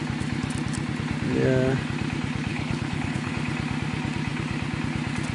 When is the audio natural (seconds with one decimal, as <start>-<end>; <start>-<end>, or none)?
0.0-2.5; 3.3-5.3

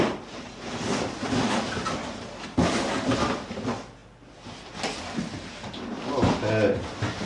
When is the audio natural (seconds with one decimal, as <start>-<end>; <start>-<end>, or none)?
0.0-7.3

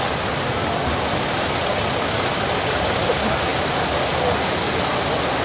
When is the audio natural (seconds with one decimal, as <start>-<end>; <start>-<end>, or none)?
0.0-5.4

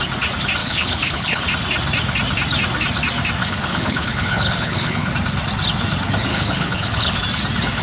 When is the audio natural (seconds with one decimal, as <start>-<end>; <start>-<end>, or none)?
0.0-0.6; 1.4-3.4; 5.1-6.3; 7.2-7.8

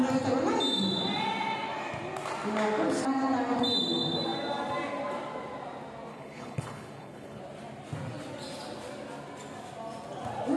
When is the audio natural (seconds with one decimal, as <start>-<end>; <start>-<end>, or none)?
0.0-6.1; 7.4-10.6